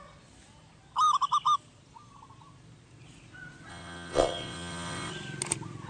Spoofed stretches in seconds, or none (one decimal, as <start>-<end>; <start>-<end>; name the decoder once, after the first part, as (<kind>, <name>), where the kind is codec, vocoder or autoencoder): 3.7-5.1 (vocoder, WaveNeXt)